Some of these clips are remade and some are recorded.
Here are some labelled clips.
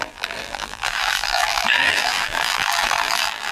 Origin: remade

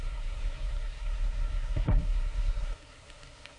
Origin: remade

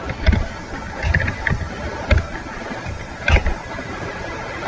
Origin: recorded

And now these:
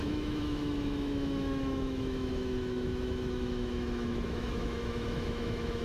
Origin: remade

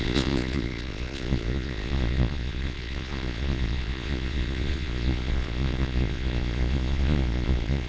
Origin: remade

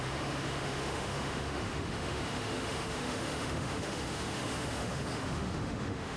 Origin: remade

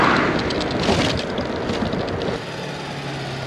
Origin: recorded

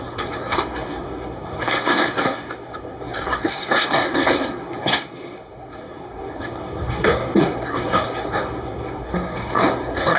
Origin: remade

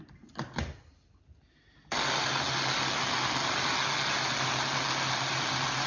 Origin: recorded